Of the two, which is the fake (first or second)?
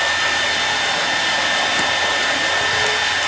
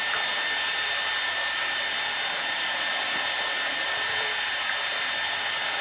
second